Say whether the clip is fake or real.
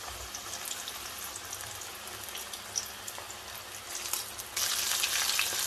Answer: real